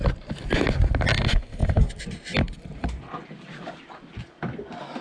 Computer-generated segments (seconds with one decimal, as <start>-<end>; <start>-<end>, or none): none